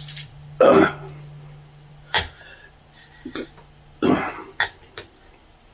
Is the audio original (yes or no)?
yes